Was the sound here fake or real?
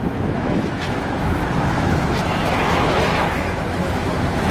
fake